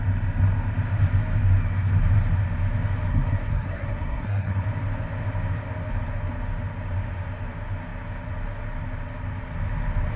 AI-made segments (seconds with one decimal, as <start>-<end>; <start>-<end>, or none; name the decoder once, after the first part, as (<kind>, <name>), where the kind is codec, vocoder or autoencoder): 3.1-4.6 (codec, SNAC)